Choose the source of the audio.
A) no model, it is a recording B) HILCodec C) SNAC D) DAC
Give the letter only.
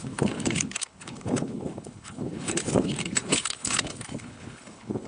B